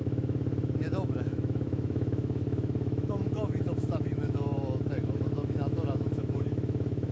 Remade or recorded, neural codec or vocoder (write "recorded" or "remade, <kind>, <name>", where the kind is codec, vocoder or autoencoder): remade, autoencoder, DAC-VAE